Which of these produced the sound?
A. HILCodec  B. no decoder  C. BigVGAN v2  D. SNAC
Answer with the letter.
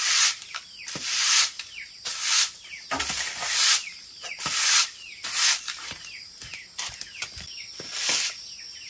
C